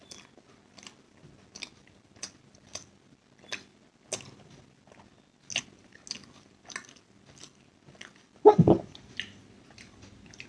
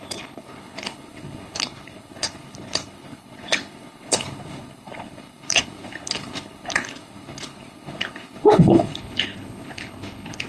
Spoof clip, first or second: second